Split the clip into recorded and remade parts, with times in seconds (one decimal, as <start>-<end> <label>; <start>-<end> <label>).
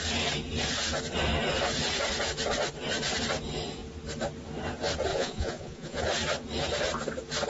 0.0-5.1 recorded; 5.1-6.0 remade; 6.0-7.5 recorded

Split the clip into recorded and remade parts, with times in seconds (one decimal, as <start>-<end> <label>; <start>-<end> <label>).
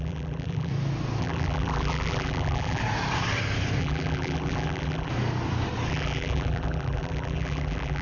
0.0-0.7 remade; 0.7-1.2 recorded; 1.2-2.8 remade; 2.8-3.8 recorded; 3.8-5.1 remade; 5.1-5.9 recorded; 5.9-8.0 remade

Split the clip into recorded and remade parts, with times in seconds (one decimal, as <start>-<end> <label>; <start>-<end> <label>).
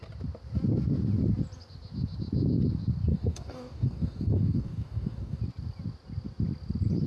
0.0-3.1 recorded; 3.1-5.4 remade; 5.4-7.1 recorded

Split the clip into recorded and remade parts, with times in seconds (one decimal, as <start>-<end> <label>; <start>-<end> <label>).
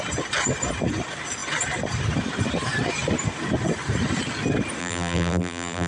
0.0-4.8 recorded; 4.8-5.9 remade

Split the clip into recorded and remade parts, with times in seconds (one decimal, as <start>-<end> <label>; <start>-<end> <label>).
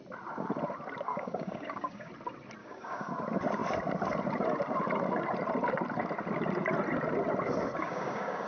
0.0-1.1 recorded; 1.1-2.1 remade; 2.1-2.6 recorded; 2.6-3.1 remade; 3.1-7.8 recorded; 7.8-8.5 remade